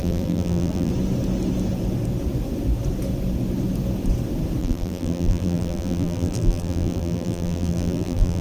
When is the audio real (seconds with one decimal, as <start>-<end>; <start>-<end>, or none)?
0.9-4.6